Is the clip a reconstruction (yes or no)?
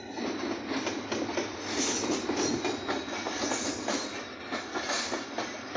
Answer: no